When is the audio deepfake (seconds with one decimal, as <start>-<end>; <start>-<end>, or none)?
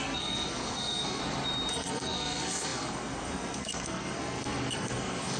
0.0-1.2; 1.7-5.4